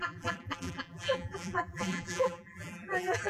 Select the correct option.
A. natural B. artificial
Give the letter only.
B